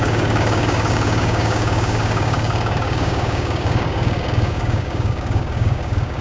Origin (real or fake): fake